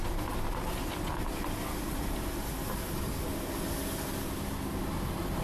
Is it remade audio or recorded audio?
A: recorded